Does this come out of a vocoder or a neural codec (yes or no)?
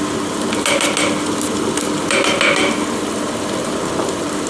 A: no